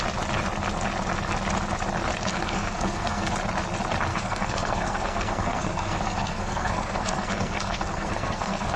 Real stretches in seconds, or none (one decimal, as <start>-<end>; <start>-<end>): 0.0-2.3; 3.3-4.1